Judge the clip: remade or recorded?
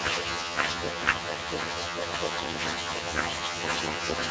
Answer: remade